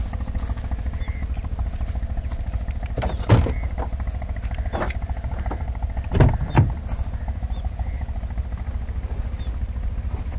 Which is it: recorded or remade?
recorded